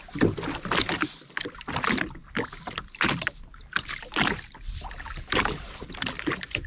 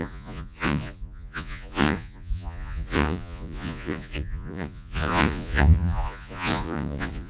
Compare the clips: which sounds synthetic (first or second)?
second